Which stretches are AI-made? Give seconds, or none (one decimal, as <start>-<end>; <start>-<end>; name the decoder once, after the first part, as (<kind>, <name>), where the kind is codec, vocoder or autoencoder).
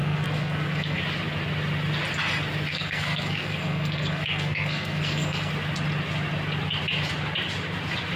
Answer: 0.0-1.0 (codec, SNAC); 2.7-5.5